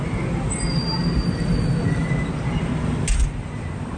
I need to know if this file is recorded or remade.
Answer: recorded